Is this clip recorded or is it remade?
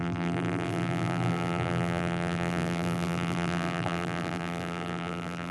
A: remade